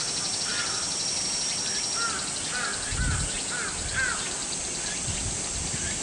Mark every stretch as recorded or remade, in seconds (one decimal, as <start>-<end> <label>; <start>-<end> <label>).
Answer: 0.0-6.0 recorded